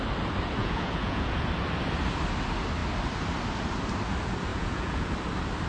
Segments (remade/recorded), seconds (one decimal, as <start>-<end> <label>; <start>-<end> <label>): 0.0-0.6 recorded; 0.6-1.4 remade; 1.4-4.5 recorded; 4.5-5.1 remade; 5.1-5.7 recorded